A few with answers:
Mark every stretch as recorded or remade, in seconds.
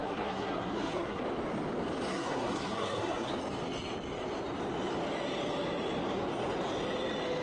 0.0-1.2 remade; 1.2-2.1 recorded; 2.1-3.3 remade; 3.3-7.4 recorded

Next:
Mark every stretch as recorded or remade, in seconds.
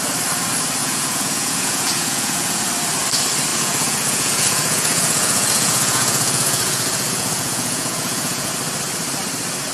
0.0-0.8 recorded; 0.8-2.7 remade; 2.7-3.5 recorded; 3.5-8.5 remade; 8.5-9.7 recorded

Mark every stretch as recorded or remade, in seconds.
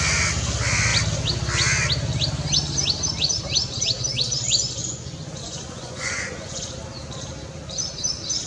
0.0-4.8 recorded; 4.8-6.6 remade; 6.6-8.5 recorded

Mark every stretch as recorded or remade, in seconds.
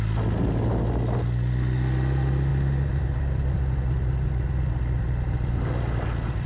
0.0-6.5 recorded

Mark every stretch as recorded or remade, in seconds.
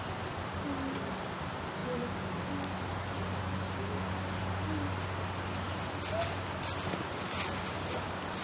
0.0-8.4 recorded